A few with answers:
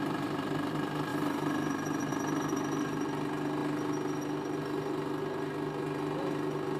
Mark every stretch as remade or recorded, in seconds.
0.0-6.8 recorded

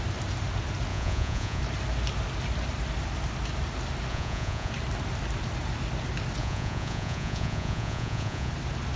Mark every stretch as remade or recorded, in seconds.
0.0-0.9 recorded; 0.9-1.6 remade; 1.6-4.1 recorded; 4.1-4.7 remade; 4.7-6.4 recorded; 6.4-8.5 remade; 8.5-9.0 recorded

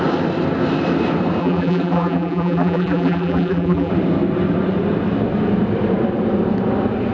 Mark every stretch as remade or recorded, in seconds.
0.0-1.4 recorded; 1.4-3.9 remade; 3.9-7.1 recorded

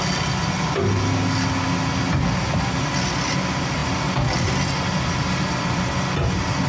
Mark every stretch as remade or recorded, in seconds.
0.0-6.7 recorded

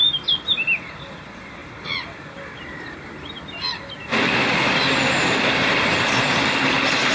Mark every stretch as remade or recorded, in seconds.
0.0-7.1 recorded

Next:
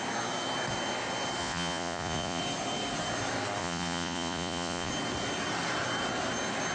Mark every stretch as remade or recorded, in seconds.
0.0-1.4 recorded; 1.4-2.4 remade; 2.4-3.6 recorded; 3.6-4.9 remade; 4.9-6.7 recorded

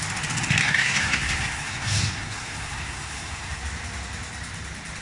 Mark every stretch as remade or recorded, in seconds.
0.0-0.6 recorded; 0.6-3.6 remade; 3.6-5.0 recorded